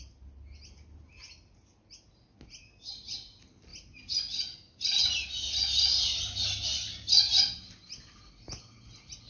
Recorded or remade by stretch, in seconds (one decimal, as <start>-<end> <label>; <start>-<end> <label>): 0.0-9.3 recorded